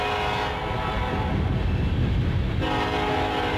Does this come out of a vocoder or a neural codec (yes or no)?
no